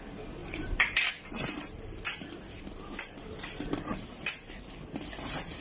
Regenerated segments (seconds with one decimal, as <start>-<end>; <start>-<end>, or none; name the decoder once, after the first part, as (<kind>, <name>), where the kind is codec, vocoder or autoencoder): 0.4-1.1 (vocoder, BigVGAN v2)